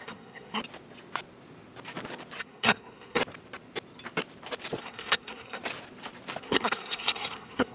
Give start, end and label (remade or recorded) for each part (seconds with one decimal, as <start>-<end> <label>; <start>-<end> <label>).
0.0-0.6 remade; 0.6-2.4 recorded; 2.4-3.2 remade; 3.2-4.8 recorded; 4.8-5.6 remade; 5.6-6.4 recorded; 6.4-7.7 remade